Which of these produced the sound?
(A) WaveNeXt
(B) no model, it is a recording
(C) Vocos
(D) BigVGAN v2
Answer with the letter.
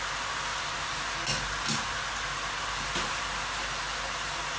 B